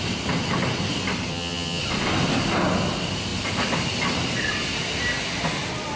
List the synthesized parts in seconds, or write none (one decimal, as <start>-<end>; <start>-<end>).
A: 1.3-1.8